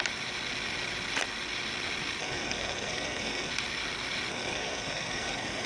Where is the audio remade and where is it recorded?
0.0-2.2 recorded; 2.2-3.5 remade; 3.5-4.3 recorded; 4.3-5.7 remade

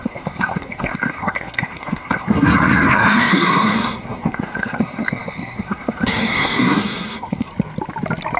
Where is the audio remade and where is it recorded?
0.0-7.5 remade; 7.5-8.4 recorded

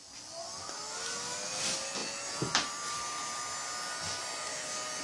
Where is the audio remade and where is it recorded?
0.0-5.0 recorded

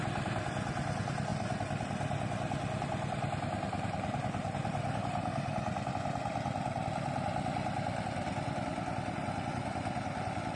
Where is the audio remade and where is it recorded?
0.0-10.6 recorded

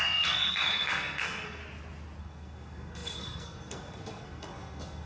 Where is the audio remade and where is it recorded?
0.0-1.6 remade; 1.6-2.2 recorded; 2.2-5.1 remade

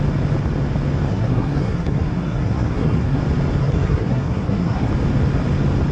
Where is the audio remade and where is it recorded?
0.0-1.1 recorded; 1.1-3.2 remade; 3.2-3.6 recorded; 3.6-4.9 remade; 4.9-5.9 recorded

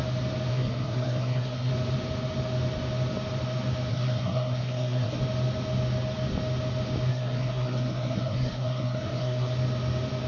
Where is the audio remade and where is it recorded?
0.0-0.5 recorded; 0.5-1.7 remade; 1.7-3.9 recorded; 3.9-5.2 remade; 5.2-7.1 recorded; 7.1-9.5 remade; 9.5-10.3 recorded